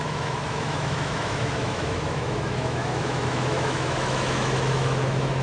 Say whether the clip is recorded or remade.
remade